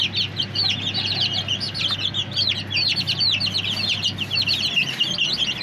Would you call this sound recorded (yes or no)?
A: yes